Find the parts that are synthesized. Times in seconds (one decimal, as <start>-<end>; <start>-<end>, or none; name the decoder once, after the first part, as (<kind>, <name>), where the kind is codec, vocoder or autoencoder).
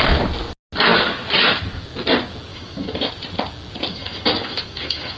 2.5-3.1 (autoencoder, DAC-VAE); 3.9-5.2